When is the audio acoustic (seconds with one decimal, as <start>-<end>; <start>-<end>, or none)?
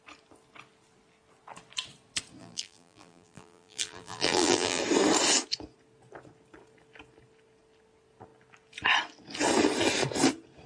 0.0-2.4; 4.8-10.7